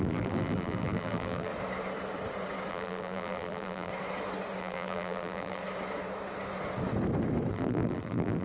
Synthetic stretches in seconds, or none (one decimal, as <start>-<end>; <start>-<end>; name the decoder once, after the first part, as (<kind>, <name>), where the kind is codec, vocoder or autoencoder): 0.0-1.5 (vocoder, BigVGAN v2); 2.7-3.9; 4.6-5.6; 7.5-8.4